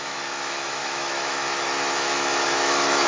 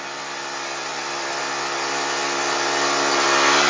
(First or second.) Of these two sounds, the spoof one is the first